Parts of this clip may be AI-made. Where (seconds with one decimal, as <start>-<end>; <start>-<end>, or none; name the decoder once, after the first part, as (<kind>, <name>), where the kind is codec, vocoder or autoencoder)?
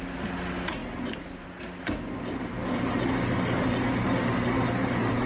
none